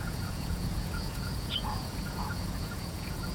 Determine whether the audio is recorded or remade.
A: remade